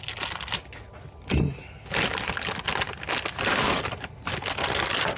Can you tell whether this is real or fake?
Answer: real